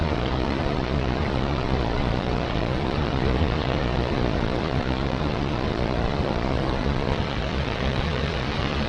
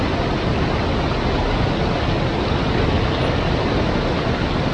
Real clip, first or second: second